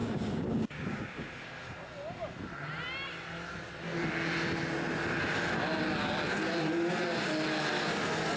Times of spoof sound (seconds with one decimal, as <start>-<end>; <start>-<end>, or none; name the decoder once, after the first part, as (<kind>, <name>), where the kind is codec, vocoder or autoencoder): 0.0-1.3 (codec, DAC)